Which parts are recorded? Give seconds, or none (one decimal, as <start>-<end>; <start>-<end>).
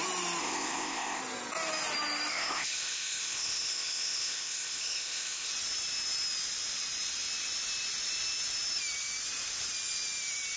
0.0-0.4; 1.2-2.3; 5.5-10.6